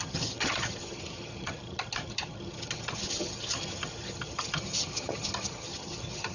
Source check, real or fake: fake